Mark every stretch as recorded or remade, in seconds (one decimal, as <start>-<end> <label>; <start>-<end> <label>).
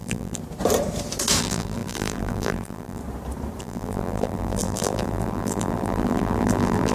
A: 0.0-0.4 remade; 0.4-1.4 recorded; 1.4-3.0 remade; 3.0-3.6 recorded; 3.6-6.9 remade